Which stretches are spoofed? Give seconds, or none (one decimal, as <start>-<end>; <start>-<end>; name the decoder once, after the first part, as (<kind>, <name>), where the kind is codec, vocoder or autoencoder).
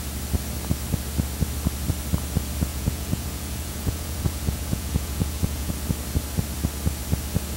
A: 2.7-5.7 (vocoder, Vocos)